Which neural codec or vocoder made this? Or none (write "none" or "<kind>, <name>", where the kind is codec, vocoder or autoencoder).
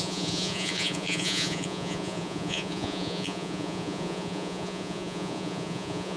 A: vocoder, Vocos